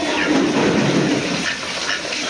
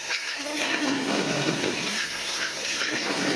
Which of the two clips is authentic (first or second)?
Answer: first